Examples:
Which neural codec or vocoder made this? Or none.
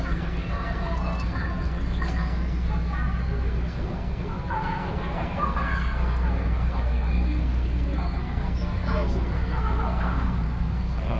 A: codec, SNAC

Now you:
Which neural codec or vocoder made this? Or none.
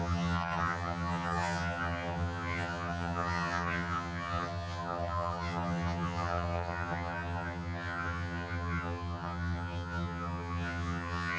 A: vocoder, HiFi-GAN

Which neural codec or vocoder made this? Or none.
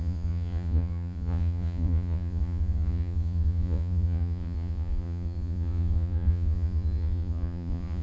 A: vocoder, Vocos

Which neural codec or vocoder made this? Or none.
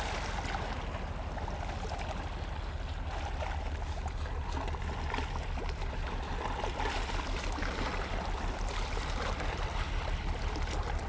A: none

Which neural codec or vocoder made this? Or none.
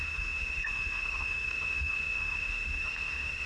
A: autoencoder, DAC-VAE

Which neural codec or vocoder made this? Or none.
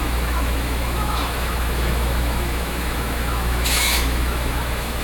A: autoencoder, DAC-VAE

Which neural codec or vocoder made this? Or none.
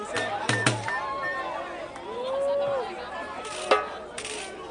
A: none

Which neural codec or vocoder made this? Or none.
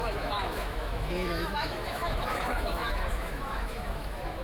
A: autoencoder, DAC-VAE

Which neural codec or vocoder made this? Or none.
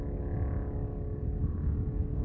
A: none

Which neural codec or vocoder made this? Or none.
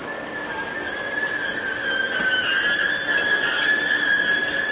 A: none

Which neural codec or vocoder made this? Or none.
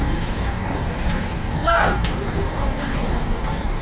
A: codec, DAC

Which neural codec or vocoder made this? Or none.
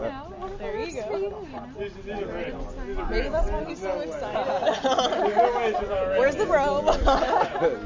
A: none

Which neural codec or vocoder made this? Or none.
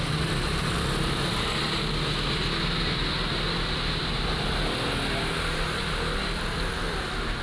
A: none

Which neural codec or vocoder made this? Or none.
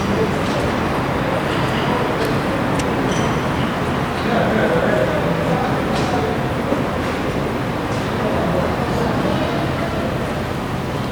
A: none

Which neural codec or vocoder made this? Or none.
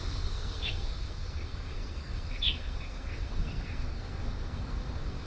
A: codec, SNAC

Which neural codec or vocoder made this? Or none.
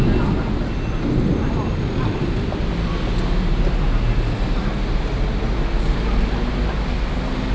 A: none